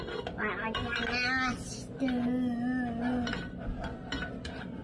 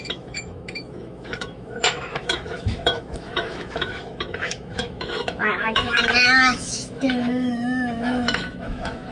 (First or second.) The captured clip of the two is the first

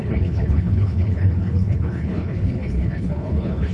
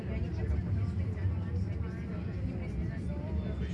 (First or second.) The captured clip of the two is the second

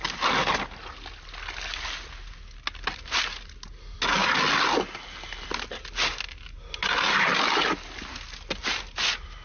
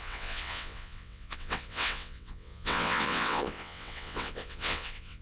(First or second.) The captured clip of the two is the first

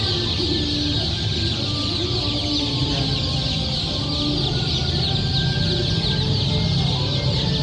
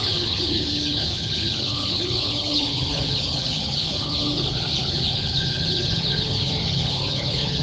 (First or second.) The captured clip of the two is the first